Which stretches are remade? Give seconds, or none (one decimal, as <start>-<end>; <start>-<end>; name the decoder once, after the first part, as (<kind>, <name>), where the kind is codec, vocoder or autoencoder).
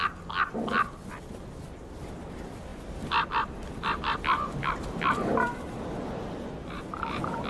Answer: none